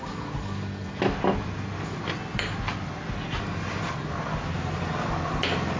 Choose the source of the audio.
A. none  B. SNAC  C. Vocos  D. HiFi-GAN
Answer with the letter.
A